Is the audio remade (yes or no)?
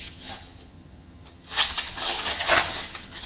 yes